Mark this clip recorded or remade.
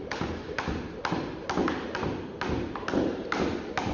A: recorded